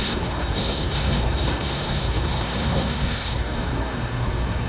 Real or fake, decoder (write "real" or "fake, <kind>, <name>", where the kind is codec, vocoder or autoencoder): fake, codec, SNAC